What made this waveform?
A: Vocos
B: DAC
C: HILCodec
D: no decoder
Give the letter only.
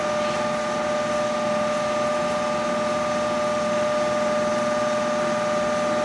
D